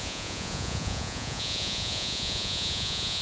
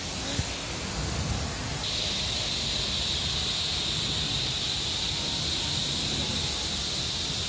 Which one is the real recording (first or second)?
second